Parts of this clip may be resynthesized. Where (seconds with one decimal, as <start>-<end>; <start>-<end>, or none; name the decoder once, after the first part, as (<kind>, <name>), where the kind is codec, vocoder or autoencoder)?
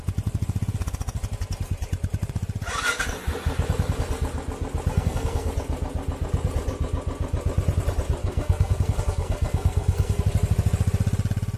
4.9-5.5 (codec, SNAC); 8.2-10.2